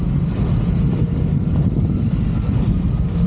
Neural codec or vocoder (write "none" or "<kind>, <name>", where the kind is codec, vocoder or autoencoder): none